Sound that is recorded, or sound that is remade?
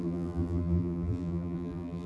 remade